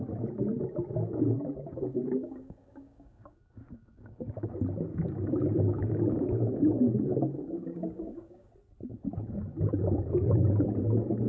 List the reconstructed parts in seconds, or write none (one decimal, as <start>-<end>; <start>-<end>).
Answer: 1.1-4.5; 4.9-8.5; 9.2-10.2